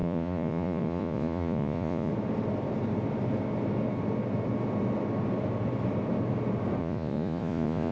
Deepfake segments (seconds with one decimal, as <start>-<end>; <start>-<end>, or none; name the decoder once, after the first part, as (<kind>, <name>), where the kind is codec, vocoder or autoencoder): 0.0-2.1 (vocoder, Vocos); 6.8-7.9